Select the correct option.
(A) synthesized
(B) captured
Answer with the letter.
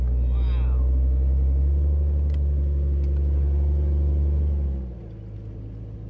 B